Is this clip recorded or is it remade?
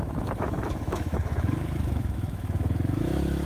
remade